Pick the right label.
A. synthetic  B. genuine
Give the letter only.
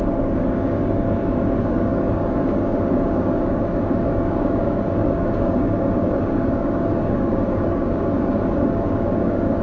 A